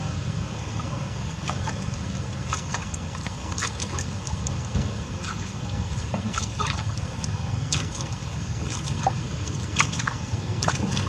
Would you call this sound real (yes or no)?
no